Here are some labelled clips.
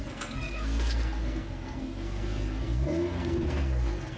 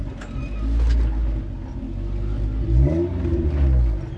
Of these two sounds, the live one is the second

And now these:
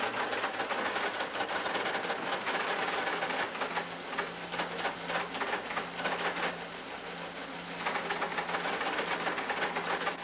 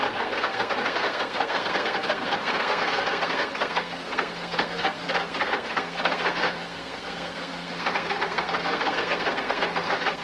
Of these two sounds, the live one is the first